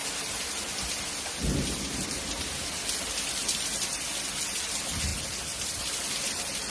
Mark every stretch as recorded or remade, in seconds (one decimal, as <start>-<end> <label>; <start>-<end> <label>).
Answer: 0.0-6.7 recorded